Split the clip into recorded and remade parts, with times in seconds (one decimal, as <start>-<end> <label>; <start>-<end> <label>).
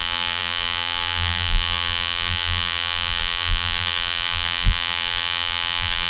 0.0-6.1 remade